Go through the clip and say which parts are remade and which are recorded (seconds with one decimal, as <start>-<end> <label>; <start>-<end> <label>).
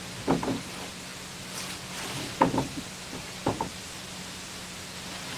0.0-5.4 recorded